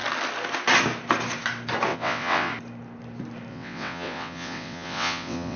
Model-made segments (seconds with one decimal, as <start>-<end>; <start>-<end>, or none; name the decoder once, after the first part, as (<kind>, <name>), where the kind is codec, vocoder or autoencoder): 1.9-2.5 (vocoder, WaveNeXt); 3.5-5.6